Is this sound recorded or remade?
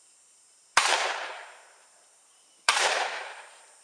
remade